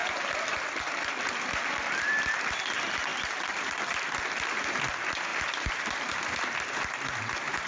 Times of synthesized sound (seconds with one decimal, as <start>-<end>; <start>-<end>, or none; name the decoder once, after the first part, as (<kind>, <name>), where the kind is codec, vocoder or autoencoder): 0.0-2.6 (vocoder, BigVGAN v2); 3.1-4.2; 5.3-6.1

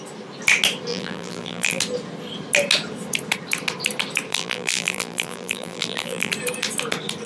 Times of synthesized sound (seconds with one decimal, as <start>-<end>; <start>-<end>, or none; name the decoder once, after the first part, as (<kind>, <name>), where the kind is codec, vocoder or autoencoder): 0.9-1.8 (vocoder, BigVGAN v2); 4.3-6.3